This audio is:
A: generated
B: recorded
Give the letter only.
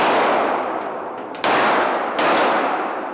B